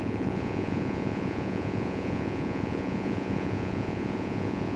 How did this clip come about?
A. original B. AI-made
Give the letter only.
B